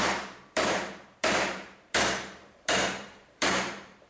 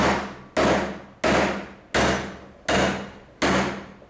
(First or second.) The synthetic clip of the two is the first